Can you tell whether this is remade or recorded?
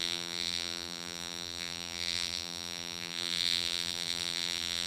remade